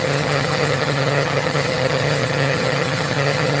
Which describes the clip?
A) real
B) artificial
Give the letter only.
B